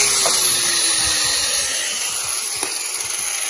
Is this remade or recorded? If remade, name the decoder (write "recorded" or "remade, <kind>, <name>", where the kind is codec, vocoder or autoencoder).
recorded